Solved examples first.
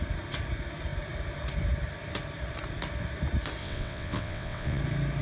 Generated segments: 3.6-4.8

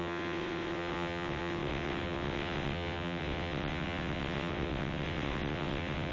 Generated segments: 0.0-6.1

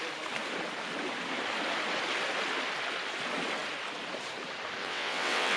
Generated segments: 4.8-5.6

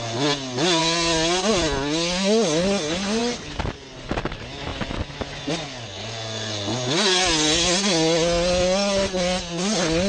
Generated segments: none

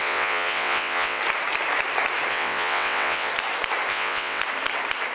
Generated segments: 0.0-1.2; 2.3-3.3; 3.9-4.4

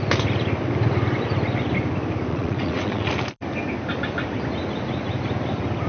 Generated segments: 2.3-3.1

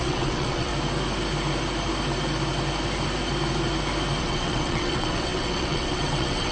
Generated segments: 0.0-0.7; 4.2-6.5